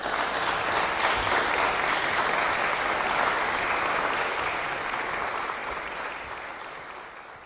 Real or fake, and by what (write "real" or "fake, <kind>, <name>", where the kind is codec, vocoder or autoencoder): real